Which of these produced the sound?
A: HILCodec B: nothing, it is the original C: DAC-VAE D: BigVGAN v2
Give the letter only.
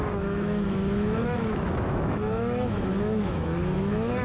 C